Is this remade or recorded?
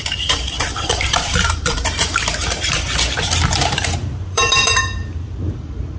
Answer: remade